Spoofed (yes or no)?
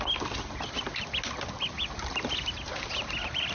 no